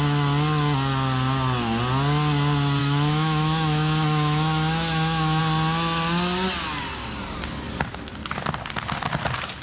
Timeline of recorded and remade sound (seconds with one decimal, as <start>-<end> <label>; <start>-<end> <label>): 0.0-2.8 recorded; 2.8-5.4 remade; 5.4-9.6 recorded